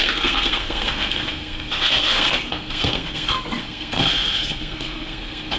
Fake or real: fake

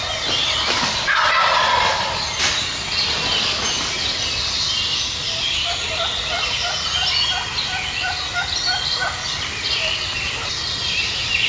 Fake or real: real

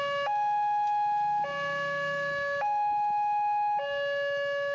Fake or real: real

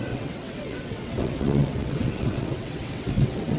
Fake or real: fake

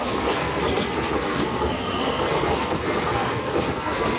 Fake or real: fake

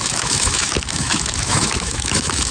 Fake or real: fake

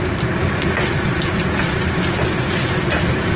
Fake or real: real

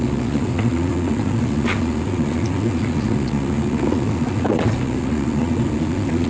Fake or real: fake